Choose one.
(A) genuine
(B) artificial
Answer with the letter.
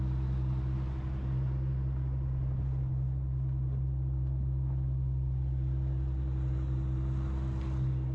A